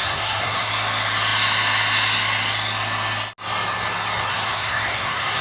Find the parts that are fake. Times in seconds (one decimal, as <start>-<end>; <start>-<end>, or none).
0.0-0.7; 4.3-5.4